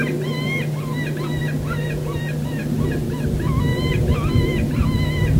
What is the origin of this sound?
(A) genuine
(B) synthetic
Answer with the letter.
A